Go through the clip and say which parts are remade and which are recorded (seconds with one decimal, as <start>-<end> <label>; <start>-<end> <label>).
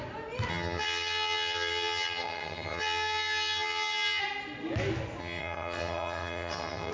0.0-0.5 recorded; 0.5-4.2 remade; 4.2-5.2 recorded; 5.2-6.9 remade